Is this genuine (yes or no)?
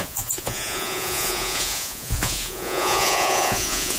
no